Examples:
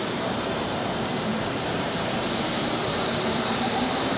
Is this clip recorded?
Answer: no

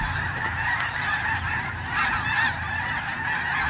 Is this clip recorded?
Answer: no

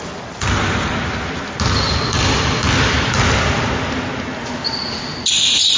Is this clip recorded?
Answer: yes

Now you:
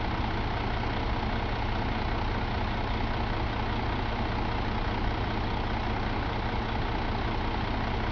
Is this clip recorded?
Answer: yes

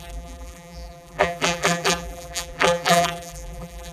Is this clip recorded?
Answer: no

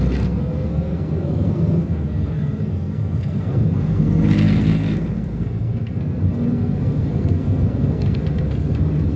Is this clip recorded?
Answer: no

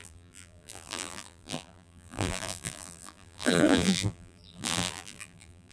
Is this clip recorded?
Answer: no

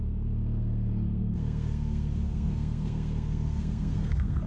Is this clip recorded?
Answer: no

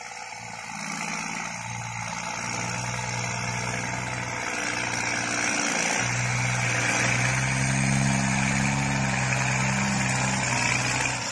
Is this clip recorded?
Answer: yes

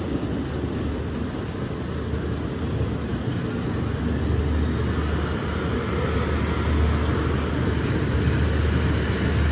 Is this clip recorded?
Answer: yes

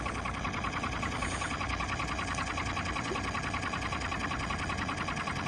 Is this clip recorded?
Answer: yes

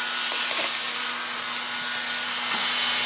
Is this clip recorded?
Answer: yes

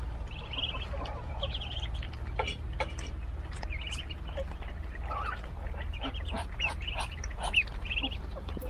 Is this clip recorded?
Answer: yes